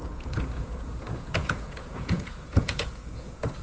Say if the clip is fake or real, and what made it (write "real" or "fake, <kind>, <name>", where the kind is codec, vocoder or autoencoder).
fake, vocoder, Vocos